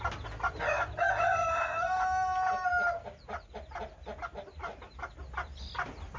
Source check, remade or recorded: recorded